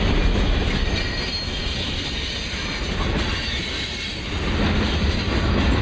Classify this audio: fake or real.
real